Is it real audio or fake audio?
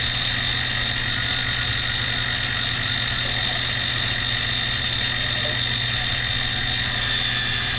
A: real